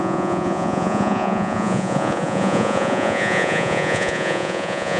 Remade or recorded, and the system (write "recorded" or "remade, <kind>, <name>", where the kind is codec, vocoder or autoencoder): remade, vocoder, Vocos